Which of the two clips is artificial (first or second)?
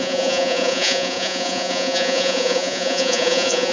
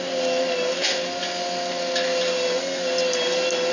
first